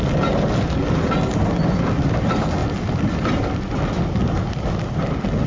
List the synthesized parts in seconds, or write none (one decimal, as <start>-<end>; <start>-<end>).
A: none